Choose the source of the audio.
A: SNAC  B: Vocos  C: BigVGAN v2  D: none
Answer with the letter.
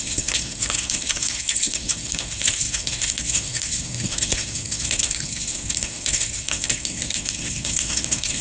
A